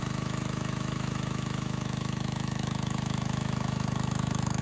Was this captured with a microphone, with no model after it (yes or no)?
no